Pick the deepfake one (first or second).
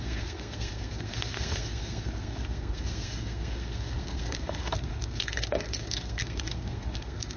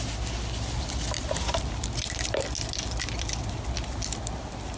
first